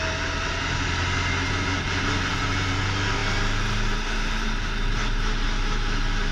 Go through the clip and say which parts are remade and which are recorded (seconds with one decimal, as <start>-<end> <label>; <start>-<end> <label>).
0.0-6.3 recorded